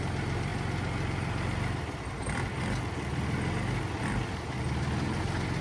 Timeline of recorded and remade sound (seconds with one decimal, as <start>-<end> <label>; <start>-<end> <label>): 0.0-5.6 recorded